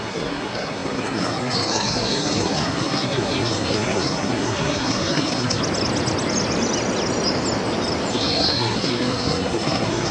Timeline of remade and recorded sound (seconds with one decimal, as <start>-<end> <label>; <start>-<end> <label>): 0.0-5.6 remade; 5.6-8.1 recorded; 8.1-10.1 remade